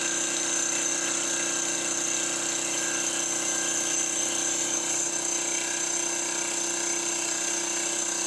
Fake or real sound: real